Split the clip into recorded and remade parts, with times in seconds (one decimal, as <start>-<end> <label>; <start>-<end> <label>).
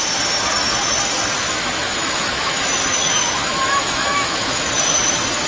0.0-1.4 recorded; 1.4-4.7 remade; 4.7-5.5 recorded